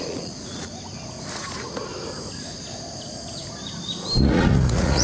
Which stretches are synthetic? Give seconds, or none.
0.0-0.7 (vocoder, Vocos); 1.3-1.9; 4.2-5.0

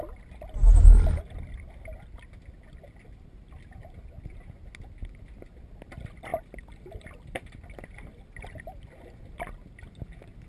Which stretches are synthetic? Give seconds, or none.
6.3-7.5 (vocoder, BigVGAN v2)

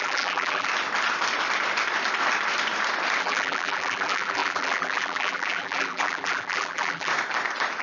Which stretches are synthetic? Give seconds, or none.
0.0-0.7 (vocoder, BigVGAN v2); 3.2-7.1

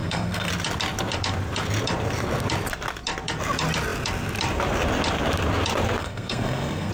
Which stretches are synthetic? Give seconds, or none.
0.0-0.5 (codec, SNAC); 6.0-6.9

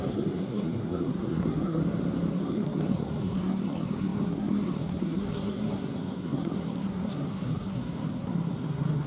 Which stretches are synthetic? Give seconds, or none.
0.0-1.8 (codec, SNAC); 2.3-9.1